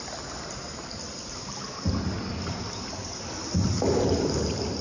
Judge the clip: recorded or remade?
recorded